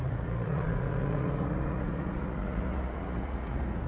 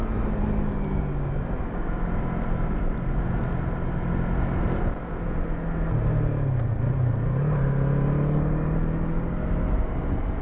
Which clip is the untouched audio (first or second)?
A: second